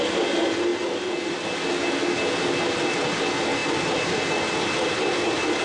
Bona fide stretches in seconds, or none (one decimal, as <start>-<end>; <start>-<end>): 0.0-5.6